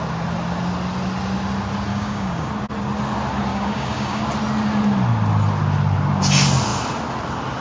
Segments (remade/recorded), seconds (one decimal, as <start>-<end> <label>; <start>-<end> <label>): 0.0-1.9 recorded; 1.9-2.5 remade; 2.5-3.5 recorded; 3.5-4.2 remade; 4.2-7.6 recorded